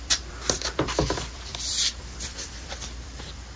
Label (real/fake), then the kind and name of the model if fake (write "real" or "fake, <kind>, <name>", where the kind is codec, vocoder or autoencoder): fake, vocoder, BigVGAN v2